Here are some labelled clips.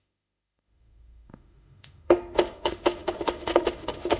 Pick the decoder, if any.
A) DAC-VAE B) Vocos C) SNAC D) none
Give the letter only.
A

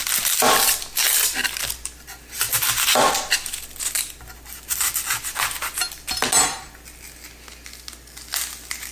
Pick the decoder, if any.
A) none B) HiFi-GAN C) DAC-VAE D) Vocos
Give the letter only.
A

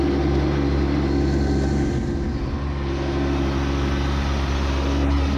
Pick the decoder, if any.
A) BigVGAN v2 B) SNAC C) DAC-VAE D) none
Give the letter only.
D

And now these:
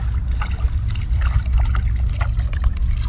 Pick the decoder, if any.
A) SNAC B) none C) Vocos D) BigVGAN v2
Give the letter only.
B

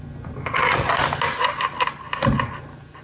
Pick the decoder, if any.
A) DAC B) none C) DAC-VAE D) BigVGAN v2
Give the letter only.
B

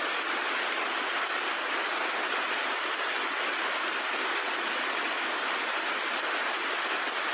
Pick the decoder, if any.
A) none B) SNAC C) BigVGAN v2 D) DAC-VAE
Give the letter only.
A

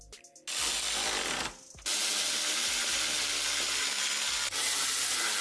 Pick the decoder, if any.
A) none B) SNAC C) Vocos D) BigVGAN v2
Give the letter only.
A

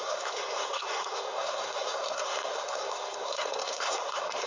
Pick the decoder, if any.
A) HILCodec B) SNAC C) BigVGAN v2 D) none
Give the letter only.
B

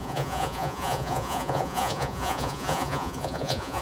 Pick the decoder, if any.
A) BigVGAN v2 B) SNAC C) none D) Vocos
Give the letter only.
D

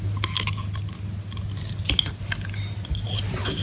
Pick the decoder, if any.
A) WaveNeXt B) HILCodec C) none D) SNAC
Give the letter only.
C